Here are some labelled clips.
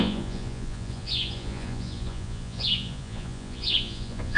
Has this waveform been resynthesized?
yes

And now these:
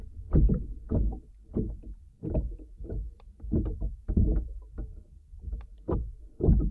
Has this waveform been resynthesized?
no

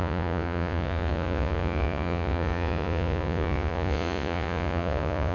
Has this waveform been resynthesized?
yes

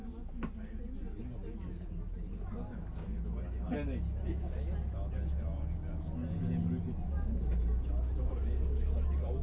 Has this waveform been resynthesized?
no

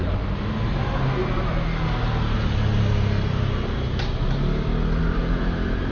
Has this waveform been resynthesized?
no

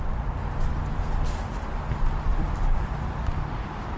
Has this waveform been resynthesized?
no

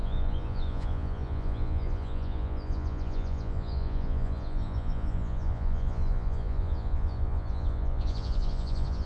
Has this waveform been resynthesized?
yes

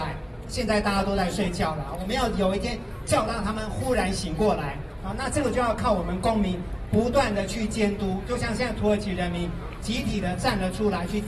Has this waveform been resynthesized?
no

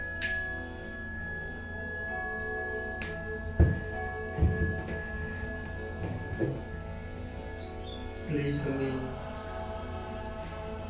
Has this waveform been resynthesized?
no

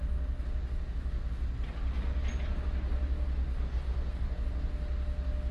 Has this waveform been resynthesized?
no